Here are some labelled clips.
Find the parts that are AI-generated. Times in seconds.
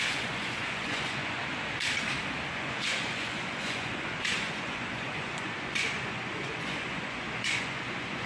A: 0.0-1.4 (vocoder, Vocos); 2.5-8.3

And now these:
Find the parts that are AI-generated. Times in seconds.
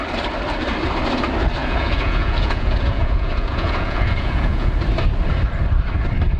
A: 1.6-4.7 (vocoder, Vocos)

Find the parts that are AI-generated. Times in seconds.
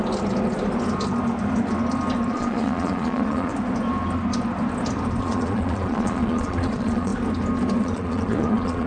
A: 2.3-3.5 (vocoder, Vocos); 5.2-7.1; 7.8-8.9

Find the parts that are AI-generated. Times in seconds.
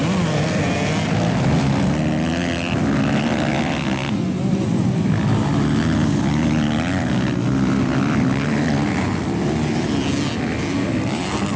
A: none